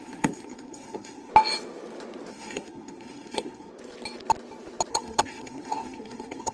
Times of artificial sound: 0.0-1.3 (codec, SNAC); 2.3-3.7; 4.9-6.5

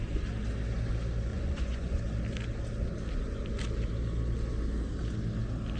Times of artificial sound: 1.3-2.0 (vocoder, Vocos)

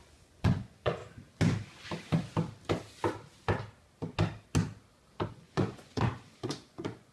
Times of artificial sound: 0.0-1.0 (vocoder, Vocos); 5.3-7.1

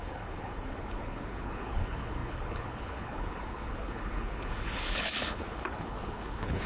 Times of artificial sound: 0.0-6.7 (codec, HILCodec)

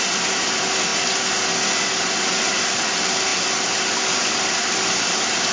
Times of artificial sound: none

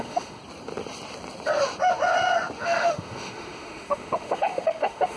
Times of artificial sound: 0.0-0.4 (autoencoder, DAC-VAE); 2.6-5.2

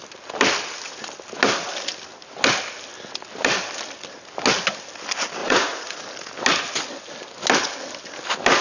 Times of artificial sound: 5.4-6.0 (vocoder, Vocos)